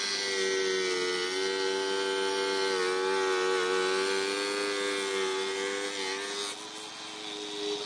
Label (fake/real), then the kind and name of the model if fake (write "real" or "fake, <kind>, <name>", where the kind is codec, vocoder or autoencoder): real